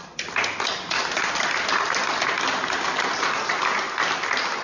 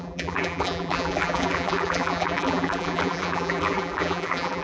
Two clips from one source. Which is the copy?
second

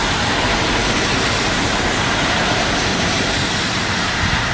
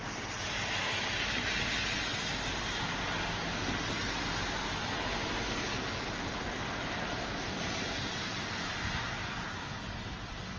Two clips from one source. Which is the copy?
first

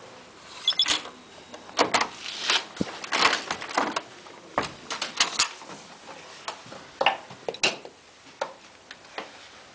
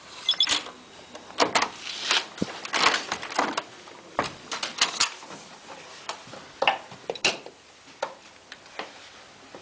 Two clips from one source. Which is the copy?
second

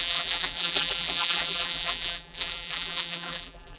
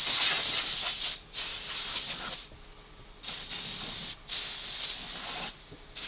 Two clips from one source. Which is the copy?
first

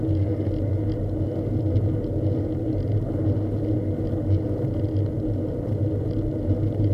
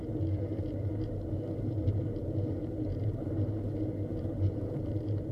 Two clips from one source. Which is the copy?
second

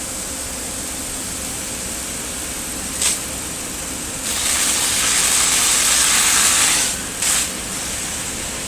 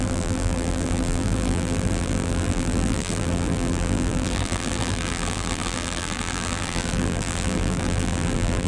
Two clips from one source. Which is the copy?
second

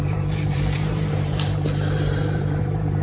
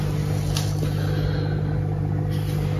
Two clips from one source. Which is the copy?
first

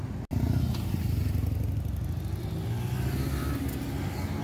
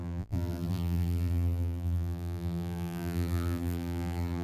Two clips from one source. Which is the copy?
second